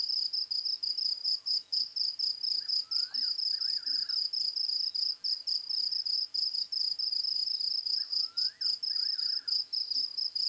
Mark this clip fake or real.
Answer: real